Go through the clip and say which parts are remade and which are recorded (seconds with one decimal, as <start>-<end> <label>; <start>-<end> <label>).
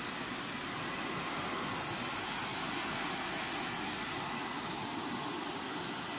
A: 0.0-6.2 recorded